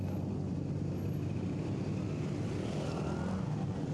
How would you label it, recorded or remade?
recorded